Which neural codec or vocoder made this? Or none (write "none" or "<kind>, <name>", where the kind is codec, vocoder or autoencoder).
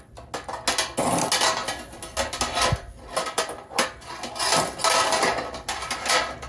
none